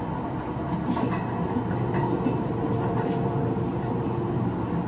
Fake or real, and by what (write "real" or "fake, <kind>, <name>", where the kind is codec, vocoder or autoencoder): real